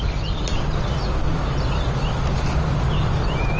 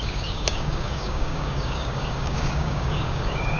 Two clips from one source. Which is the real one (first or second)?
first